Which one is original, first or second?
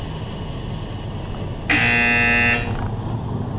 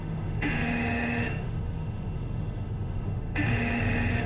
first